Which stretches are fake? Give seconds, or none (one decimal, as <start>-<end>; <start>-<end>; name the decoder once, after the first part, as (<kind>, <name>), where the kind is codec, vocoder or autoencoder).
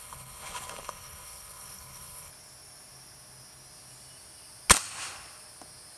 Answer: 0.0-2.3 (codec, HILCodec)